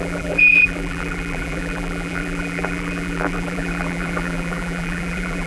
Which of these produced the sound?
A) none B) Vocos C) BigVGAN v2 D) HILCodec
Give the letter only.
C